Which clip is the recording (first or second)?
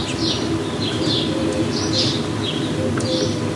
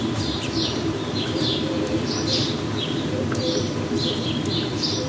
first